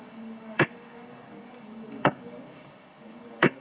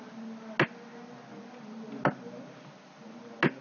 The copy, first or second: first